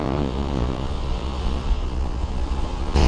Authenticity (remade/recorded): remade